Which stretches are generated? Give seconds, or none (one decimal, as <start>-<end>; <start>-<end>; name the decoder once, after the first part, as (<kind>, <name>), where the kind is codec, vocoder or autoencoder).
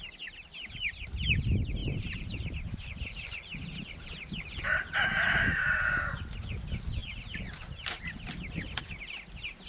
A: 1.8-4.6 (vocoder, BigVGAN v2); 7.0-8.0